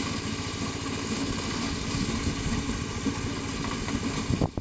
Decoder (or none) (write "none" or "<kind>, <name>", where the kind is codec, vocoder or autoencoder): none